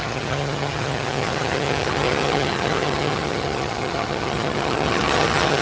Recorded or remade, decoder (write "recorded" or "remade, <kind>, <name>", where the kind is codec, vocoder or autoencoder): remade, vocoder, HiFi-GAN